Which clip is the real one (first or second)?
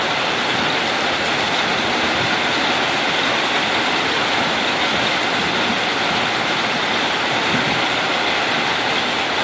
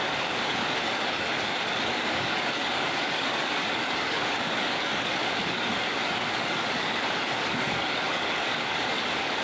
first